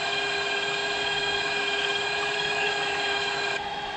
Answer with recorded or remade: remade